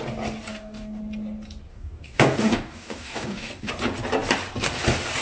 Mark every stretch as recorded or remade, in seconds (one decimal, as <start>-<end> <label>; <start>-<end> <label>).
0.0-0.5 recorded; 0.5-1.0 remade; 1.0-1.7 recorded; 1.7-3.7 remade; 3.7-5.2 recorded